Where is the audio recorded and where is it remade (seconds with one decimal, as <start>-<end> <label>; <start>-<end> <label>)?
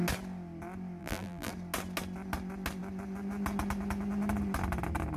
0.0-1.0 recorded; 1.0-1.5 remade; 1.5-5.2 recorded